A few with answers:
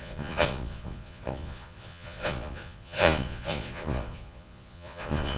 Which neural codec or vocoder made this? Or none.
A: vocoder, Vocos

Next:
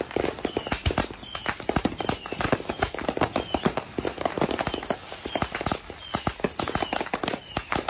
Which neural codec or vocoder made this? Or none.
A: none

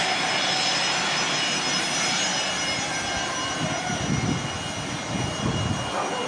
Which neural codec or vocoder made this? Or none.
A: none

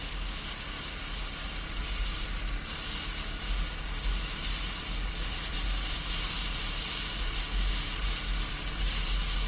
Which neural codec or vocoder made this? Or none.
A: none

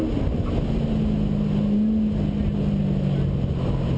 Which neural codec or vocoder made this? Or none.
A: none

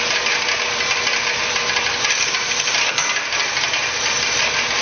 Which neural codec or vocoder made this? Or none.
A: none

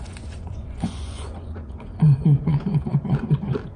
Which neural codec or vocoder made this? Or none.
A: vocoder, Vocos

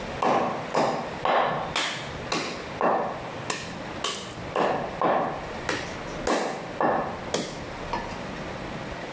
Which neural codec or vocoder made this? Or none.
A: none